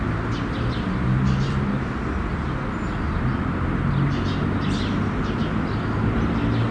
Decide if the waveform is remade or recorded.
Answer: recorded